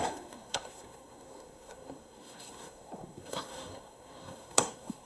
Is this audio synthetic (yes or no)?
yes